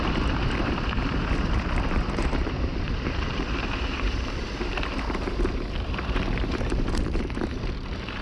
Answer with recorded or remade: remade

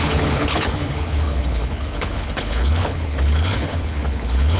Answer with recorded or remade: remade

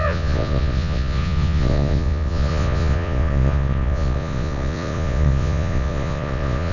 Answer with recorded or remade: remade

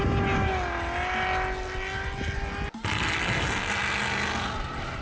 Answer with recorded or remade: recorded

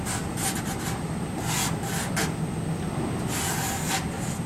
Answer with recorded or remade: recorded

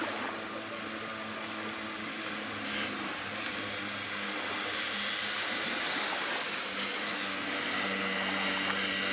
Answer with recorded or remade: recorded